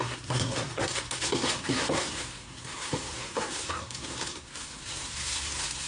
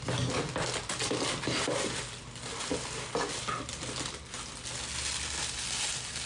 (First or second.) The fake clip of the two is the first